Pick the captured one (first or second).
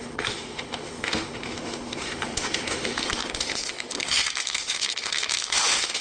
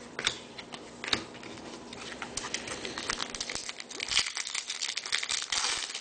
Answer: second